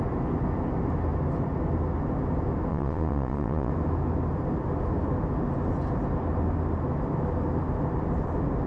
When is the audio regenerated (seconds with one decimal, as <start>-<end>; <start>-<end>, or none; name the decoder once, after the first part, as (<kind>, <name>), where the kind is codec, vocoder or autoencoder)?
2.7-3.7 (vocoder, Vocos)